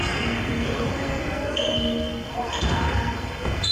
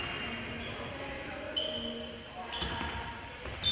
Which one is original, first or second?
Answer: second